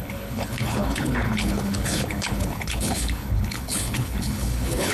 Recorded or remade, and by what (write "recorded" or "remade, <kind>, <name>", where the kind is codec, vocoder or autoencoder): remade, codec, HILCodec